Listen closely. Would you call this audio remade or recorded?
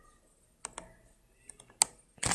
recorded